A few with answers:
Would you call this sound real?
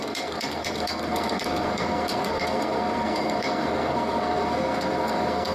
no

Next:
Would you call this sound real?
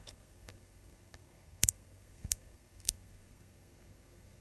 no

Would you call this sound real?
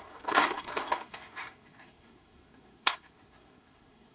no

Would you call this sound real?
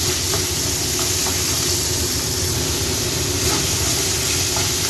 yes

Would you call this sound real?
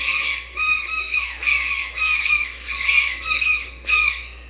no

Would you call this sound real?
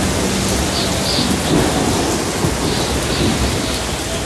yes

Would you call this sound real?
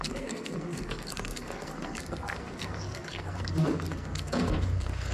no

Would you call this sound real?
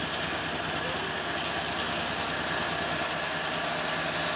yes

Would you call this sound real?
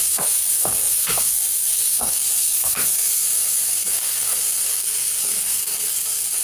no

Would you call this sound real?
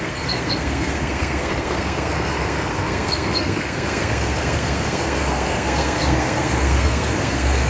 no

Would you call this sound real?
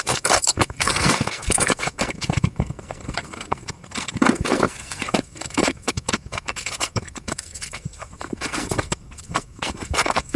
no